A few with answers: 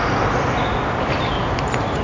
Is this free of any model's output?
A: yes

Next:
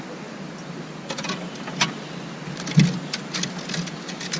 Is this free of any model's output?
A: yes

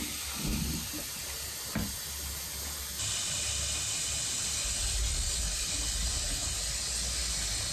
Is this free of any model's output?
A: yes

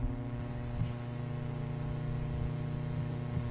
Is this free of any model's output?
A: yes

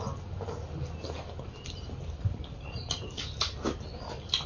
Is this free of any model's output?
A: yes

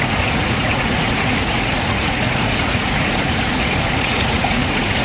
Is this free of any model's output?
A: no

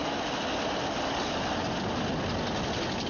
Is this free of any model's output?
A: yes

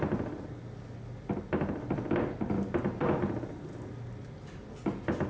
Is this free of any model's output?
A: yes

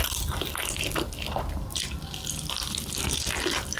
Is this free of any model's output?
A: yes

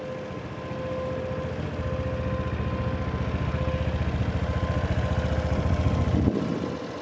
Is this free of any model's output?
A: yes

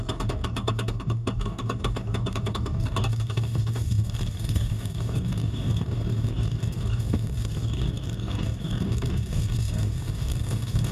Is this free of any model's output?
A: no